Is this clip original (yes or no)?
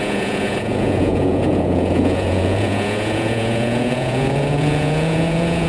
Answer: no